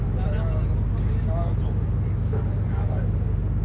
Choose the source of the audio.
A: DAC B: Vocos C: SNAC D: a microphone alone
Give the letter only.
D